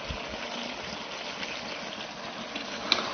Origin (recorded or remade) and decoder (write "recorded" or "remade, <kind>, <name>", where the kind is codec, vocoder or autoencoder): recorded